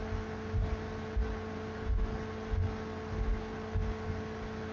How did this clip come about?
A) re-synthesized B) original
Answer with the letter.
B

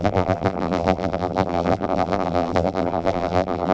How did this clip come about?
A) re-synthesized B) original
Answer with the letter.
A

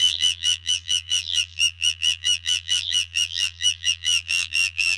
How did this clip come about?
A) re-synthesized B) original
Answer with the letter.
A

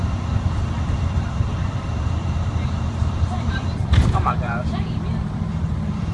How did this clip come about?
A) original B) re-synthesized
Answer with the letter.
B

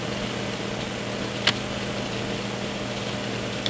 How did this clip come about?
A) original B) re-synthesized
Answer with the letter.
B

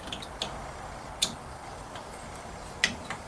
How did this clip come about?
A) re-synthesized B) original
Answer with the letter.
A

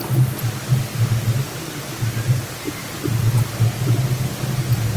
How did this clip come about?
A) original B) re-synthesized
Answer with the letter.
A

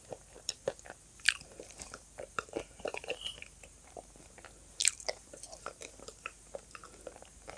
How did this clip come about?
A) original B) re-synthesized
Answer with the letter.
B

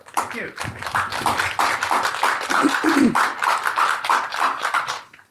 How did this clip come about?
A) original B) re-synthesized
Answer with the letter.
B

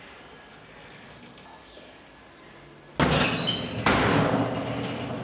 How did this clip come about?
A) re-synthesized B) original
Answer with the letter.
B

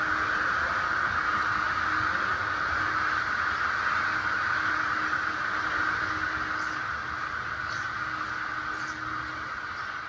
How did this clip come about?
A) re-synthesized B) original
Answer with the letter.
B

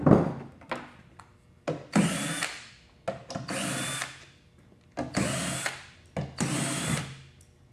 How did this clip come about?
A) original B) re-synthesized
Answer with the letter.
A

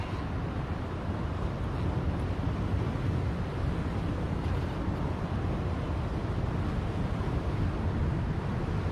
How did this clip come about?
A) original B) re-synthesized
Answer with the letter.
A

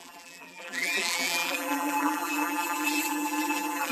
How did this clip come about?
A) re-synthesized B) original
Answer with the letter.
A